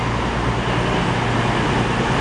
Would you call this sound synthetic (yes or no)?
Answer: no